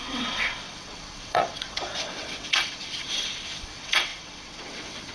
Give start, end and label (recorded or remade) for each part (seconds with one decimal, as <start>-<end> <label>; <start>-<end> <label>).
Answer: 0.0-5.1 remade